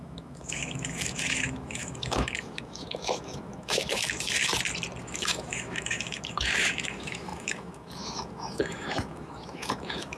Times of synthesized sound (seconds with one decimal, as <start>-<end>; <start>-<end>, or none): 0.0-4.5; 5.0-10.2